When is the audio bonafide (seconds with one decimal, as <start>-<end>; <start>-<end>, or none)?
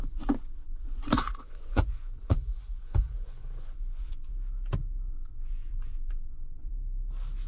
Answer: 4.3-5.1; 6.7-7.5